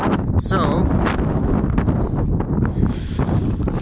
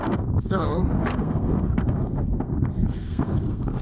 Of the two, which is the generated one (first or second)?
second